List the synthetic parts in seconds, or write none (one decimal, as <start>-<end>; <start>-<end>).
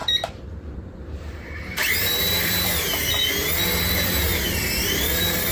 0.0-3.3; 4.3-5.5